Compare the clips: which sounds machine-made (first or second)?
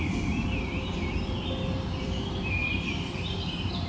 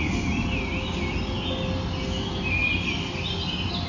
first